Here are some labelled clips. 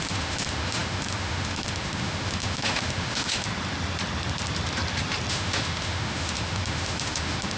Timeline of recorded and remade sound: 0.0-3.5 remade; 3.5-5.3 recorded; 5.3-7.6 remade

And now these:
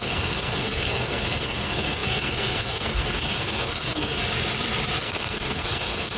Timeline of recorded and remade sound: 0.0-4.2 remade; 4.2-5.0 recorded; 5.0-6.2 remade